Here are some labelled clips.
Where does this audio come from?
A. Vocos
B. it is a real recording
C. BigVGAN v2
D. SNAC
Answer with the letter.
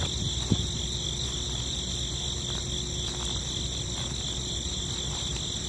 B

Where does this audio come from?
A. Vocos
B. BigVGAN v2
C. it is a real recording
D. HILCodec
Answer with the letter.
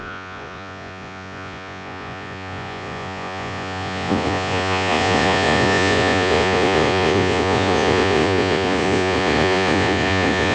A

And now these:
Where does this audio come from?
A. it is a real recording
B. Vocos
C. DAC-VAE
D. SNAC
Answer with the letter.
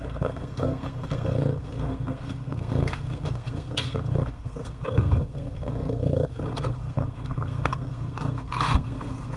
D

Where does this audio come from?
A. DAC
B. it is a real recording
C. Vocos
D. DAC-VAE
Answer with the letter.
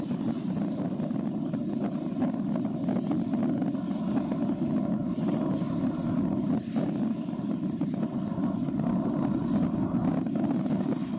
B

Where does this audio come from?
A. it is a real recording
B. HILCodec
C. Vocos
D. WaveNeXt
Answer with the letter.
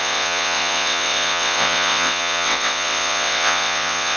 D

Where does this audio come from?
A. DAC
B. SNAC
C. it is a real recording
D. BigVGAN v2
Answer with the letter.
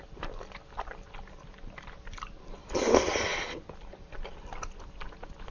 C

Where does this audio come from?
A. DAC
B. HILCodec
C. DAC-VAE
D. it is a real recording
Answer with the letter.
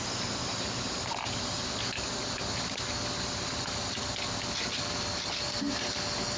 D